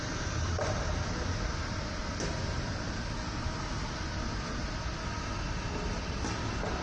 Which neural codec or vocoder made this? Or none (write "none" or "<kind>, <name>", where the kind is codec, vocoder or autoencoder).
none